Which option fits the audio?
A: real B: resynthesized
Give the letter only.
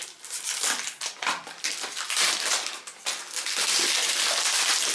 B